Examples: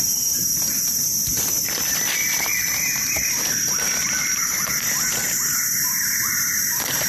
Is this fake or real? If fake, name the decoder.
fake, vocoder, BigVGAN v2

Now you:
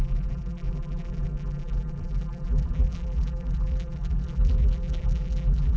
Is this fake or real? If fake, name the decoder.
fake, vocoder, BigVGAN v2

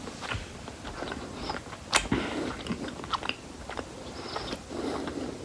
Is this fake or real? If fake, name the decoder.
fake, vocoder, BigVGAN v2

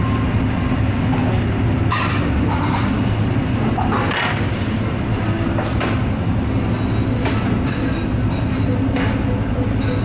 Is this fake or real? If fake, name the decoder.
real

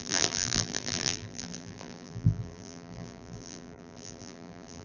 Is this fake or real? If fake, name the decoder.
fake, vocoder, BigVGAN v2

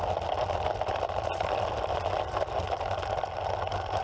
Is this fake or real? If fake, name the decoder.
real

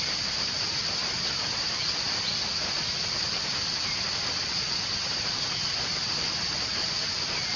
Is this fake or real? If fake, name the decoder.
real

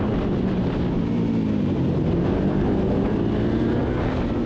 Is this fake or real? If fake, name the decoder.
real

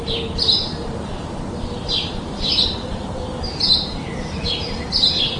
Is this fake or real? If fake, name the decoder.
fake, vocoder, BigVGAN v2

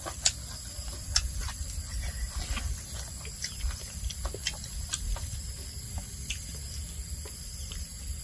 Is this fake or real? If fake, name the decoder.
real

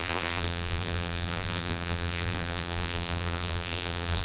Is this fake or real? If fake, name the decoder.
fake, vocoder, BigVGAN v2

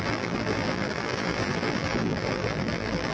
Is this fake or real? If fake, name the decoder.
fake, vocoder, BigVGAN v2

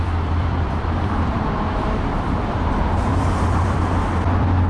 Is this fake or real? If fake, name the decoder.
fake, vocoder, BigVGAN v2